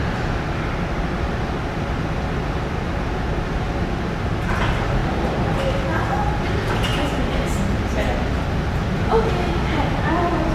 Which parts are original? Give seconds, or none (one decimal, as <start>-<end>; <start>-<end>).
0.0-10.5